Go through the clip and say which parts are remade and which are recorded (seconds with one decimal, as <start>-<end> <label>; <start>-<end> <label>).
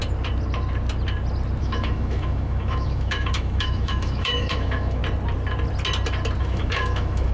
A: 0.0-1.6 recorded; 1.6-5.0 remade; 5.0-6.4 recorded; 6.4-7.3 remade